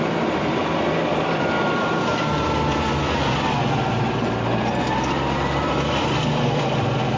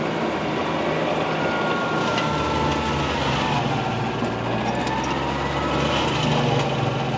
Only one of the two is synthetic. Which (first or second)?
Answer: first